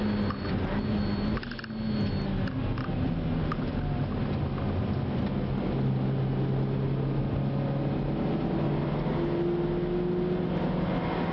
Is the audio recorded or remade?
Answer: recorded